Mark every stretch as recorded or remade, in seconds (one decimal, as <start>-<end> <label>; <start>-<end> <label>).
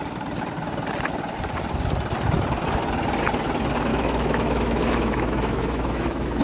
0.0-3.9 recorded; 3.9-6.4 remade